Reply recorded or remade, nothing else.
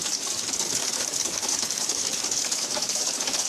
remade